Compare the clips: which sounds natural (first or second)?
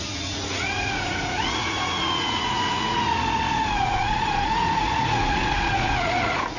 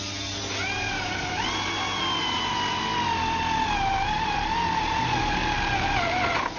second